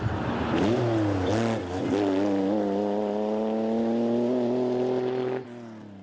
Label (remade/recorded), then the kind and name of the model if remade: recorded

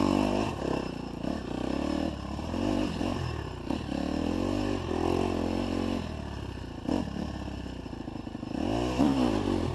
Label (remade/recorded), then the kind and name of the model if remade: recorded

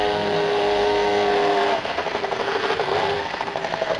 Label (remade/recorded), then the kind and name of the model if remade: remade, codec, SNAC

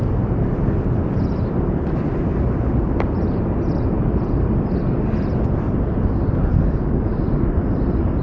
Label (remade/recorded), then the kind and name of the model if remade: recorded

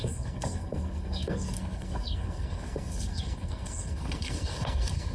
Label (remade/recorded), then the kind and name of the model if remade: remade, codec, SNAC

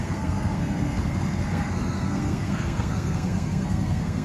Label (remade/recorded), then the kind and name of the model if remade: remade, codec, SNAC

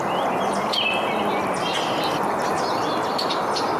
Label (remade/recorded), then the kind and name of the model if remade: recorded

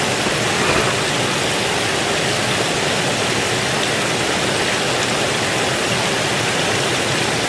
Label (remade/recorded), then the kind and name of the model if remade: recorded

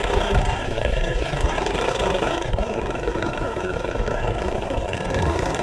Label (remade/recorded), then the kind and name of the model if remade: remade, codec, SNAC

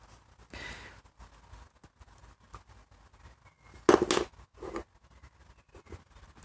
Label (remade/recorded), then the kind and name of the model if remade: recorded